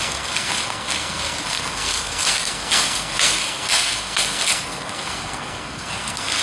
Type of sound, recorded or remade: remade